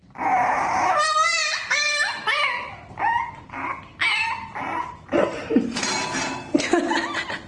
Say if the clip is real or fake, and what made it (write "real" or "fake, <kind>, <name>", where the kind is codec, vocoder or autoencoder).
real